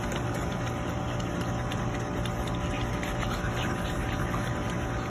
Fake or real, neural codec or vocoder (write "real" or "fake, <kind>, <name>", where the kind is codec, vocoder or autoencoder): real